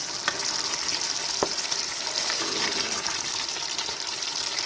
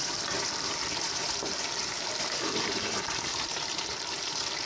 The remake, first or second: second